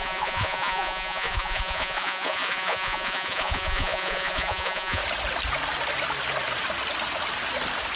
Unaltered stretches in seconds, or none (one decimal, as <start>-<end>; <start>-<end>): 5.0-8.0